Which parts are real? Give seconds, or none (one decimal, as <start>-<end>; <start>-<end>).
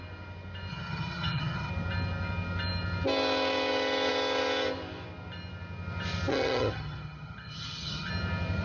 0.0-0.7; 1.7-6.3; 8.1-8.6